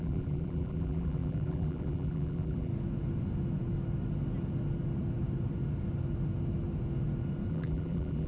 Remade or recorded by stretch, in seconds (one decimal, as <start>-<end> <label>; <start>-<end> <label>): 0.0-2.7 remade; 2.7-7.5 recorded; 7.5-8.3 remade